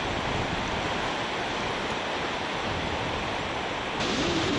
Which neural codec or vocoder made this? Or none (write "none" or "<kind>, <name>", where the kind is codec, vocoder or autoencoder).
none